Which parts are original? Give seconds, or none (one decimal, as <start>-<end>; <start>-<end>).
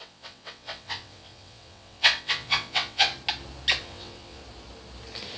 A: 3.1-3.8; 4.4-5.4